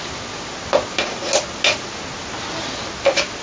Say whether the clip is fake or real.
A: real